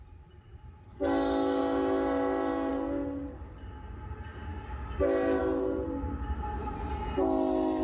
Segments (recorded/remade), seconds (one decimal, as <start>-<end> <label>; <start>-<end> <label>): 0.0-0.9 recorded; 0.9-1.6 remade; 1.6-2.7 recorded; 2.7-3.6 remade; 3.6-4.5 recorded; 4.5-5.4 remade; 5.4-7.8 recorded